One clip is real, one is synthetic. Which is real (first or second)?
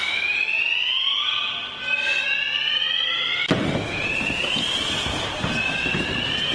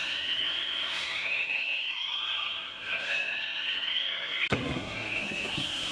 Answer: first